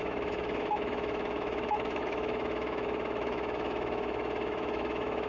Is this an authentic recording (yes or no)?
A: no